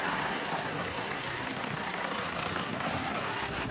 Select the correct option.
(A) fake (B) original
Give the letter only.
A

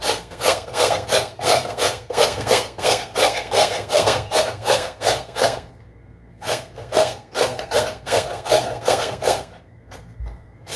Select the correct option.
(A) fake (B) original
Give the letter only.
A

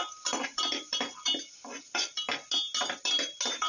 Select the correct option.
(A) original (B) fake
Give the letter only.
A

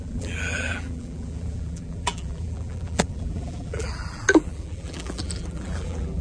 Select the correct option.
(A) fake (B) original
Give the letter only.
A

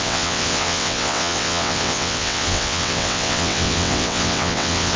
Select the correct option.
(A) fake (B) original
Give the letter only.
A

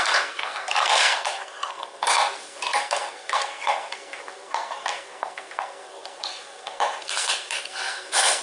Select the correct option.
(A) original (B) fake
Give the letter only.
B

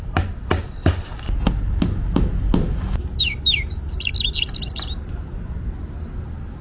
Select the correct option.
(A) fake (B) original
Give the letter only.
B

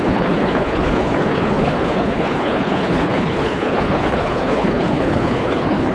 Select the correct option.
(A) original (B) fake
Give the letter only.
B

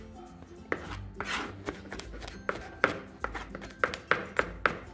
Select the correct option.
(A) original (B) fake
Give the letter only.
A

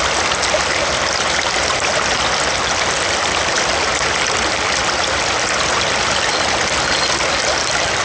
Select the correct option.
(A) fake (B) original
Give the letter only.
B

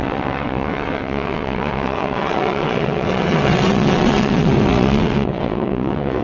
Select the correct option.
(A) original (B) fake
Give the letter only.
B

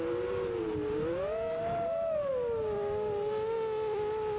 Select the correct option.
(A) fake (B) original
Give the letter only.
B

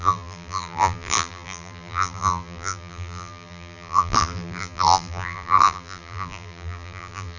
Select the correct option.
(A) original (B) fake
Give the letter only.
B